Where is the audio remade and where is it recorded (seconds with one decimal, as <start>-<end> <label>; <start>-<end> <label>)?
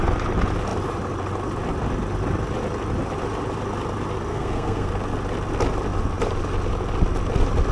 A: 0.0-4.3 recorded; 4.3-4.9 remade; 4.9-7.7 recorded